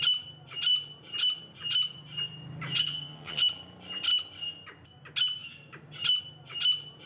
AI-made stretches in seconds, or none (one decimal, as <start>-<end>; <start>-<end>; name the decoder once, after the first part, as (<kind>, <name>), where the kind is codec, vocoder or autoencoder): 2.8-3.4 (vocoder, HiFi-GAN)